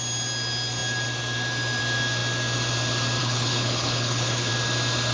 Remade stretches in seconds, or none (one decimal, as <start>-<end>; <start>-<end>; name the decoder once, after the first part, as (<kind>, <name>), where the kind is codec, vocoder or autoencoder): 3.2-4.5 (codec, HILCodec)